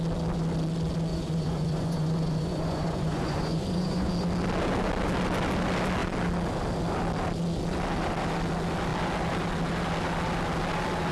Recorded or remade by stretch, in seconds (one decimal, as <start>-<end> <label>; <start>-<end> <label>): 0.0-1.1 recorded; 1.1-4.1 remade; 4.1-11.1 recorded